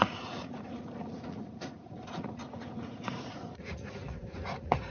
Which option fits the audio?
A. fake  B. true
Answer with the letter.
A